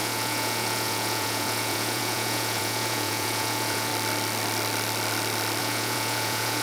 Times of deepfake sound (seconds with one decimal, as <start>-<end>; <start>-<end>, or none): 0.0-3.9; 5.6-6.6